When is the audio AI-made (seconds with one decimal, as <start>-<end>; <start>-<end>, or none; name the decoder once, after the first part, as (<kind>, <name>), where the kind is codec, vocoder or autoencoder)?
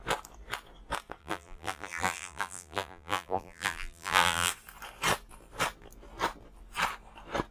1.2-4.5 (vocoder, BigVGAN v2)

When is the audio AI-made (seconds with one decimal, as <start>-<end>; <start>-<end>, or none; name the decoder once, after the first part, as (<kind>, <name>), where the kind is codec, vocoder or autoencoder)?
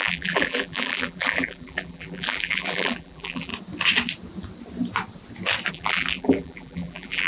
0.0-3.5 (vocoder, BigVGAN v2); 5.7-7.3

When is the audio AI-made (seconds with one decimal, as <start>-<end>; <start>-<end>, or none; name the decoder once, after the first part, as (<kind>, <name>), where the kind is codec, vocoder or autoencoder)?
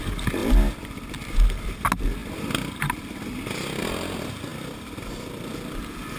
4.5-6.2 (vocoder, BigVGAN v2)